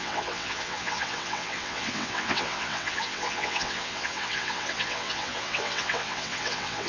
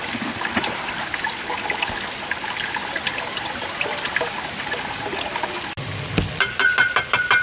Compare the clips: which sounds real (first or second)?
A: second